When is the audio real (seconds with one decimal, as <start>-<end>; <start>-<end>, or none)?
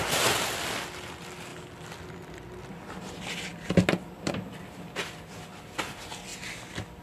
0.0-7.0